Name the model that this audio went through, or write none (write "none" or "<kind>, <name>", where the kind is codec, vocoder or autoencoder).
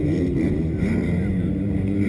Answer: vocoder, BigVGAN v2